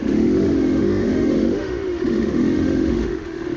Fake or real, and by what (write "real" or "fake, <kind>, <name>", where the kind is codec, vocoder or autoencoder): fake, autoencoder, DAC-VAE